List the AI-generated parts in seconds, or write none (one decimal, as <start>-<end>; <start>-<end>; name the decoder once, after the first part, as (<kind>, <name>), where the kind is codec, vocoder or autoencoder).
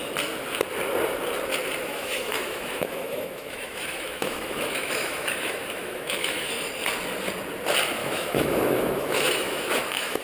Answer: 1.8-6.7 (autoencoder, DAC-VAE); 8.0-10.2